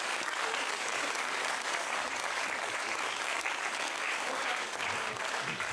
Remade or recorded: remade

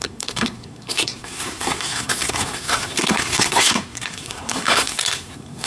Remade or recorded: remade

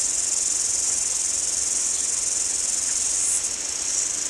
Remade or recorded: recorded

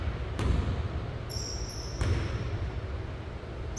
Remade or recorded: recorded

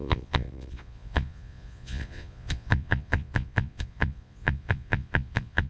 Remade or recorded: remade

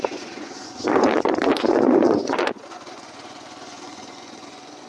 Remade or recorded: remade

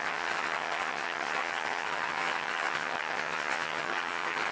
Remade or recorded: remade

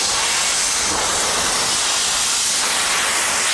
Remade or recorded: recorded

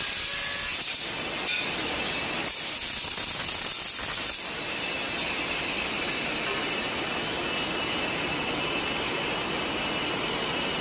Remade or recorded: recorded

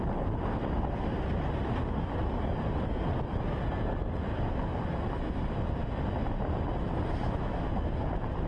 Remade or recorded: recorded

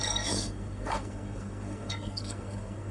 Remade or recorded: remade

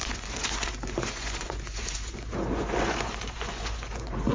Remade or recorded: remade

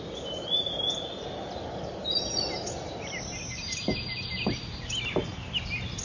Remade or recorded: recorded